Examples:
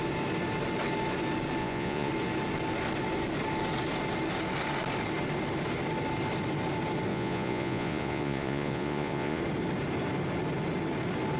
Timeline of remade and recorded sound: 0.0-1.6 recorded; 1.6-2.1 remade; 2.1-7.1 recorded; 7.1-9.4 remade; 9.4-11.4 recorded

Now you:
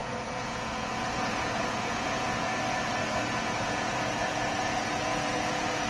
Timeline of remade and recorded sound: 0.0-2.5 remade; 2.5-3.4 recorded; 3.4-5.9 remade

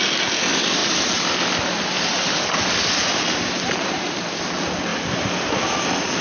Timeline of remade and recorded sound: 0.0-3.0 recorded; 3.0-4.4 remade; 4.4-4.9 recorded; 4.9-5.5 remade; 5.5-6.2 recorded

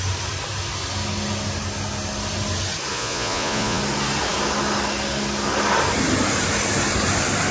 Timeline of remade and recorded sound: 0.0-2.9 recorded; 2.9-3.8 remade; 3.8-7.5 recorded

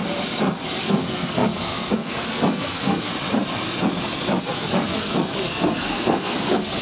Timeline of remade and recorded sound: 0.0-0.8 recorded; 0.8-3.1 remade; 3.1-4.4 recorded; 4.4-6.8 remade